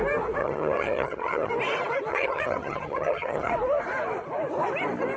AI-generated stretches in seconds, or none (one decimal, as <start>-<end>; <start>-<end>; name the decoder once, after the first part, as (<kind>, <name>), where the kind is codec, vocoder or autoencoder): 0.4-1.5 (vocoder, HiFi-GAN); 2.1-3.5